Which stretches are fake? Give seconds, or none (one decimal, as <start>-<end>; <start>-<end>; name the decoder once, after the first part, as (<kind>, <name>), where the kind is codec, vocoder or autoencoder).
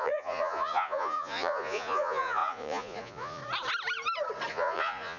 0.0-3.4 (vocoder, Vocos); 4.5-5.2